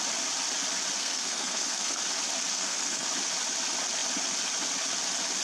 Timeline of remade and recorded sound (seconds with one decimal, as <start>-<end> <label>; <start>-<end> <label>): 0.0-1.0 recorded; 1.0-2.0 remade; 2.0-2.5 recorded; 2.5-3.1 remade; 3.1-5.4 recorded